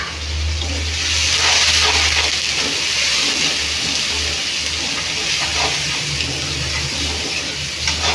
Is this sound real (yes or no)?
yes